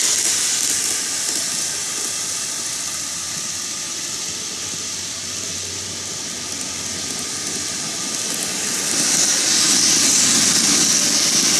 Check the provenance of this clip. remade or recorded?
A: recorded